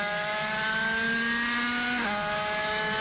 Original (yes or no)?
yes